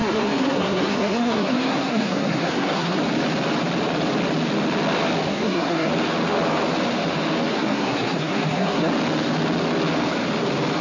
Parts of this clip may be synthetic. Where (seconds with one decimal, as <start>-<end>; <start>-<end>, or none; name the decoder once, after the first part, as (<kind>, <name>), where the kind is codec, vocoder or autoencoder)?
0.0-3.0 (codec, SNAC); 5.3-5.9; 7.5-8.9